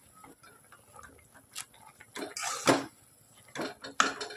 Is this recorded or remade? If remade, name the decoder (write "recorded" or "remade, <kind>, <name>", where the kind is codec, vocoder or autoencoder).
recorded